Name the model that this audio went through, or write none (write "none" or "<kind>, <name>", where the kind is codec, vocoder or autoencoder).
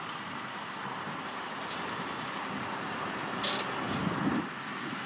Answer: none